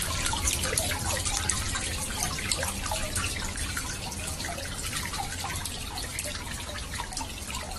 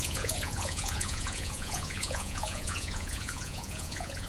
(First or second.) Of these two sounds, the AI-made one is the second